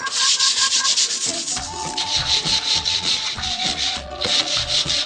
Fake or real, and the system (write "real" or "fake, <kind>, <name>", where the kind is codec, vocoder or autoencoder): fake, vocoder, Vocos